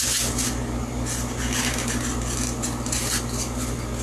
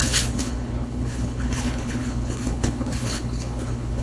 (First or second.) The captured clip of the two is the first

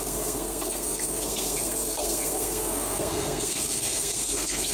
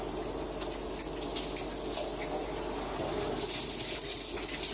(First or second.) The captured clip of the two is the second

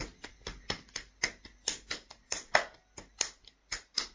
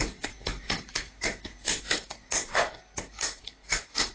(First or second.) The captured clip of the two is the first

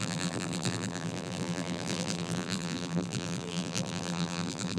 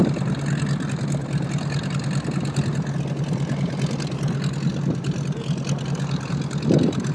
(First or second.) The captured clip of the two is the second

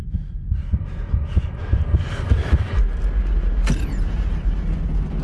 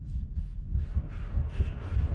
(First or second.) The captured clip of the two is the first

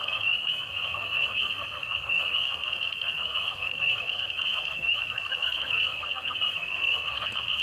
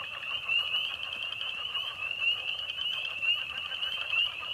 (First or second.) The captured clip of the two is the second